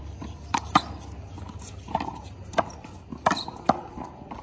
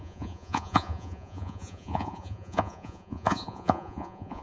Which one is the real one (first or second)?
first